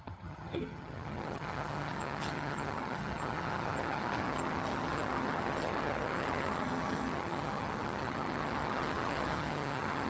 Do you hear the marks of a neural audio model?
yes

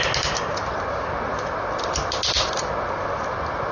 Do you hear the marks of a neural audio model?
no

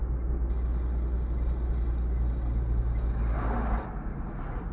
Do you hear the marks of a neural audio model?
no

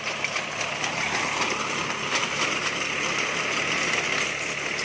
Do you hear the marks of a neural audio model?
no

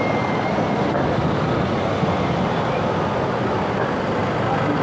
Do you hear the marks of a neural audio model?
no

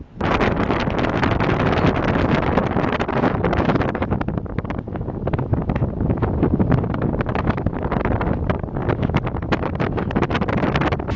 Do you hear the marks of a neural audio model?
no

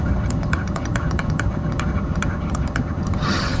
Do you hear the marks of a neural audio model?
yes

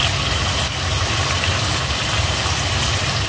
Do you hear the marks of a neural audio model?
no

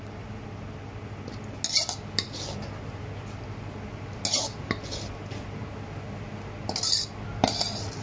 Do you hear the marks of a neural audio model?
no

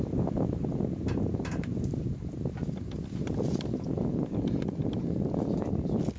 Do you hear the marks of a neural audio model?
no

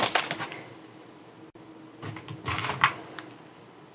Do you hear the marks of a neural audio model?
no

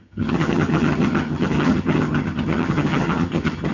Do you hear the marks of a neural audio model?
yes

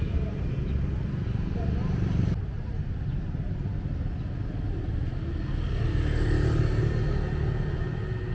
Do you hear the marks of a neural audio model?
no